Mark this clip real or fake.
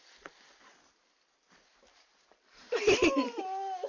real